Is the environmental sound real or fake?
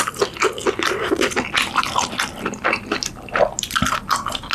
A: real